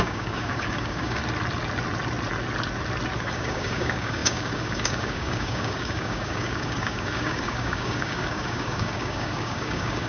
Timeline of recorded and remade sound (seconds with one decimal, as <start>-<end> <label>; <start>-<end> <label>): 0.0-1.2 remade; 1.2-3.2 recorded; 3.2-10.1 remade